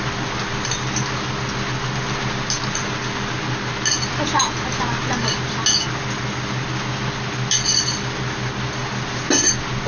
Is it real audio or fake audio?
real